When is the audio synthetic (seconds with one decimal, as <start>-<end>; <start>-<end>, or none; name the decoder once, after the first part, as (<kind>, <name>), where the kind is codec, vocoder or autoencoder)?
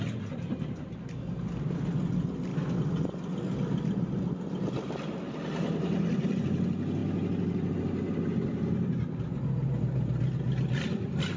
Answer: none